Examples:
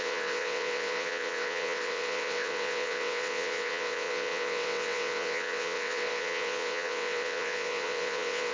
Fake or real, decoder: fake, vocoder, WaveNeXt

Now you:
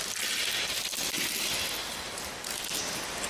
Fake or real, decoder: real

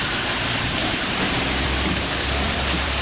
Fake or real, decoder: fake, vocoder, BigVGAN v2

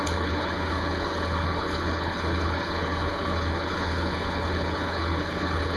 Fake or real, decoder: fake, codec, HILCodec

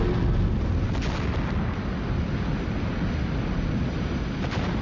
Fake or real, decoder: real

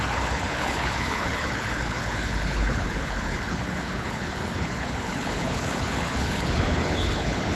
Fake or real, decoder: fake, codec, HILCodec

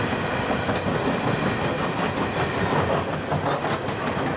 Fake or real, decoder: real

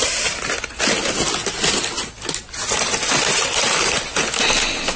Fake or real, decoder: real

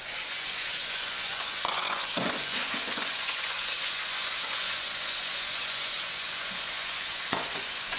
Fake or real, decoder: fake, vocoder, Vocos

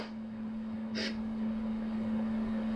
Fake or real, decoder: fake, codec, DAC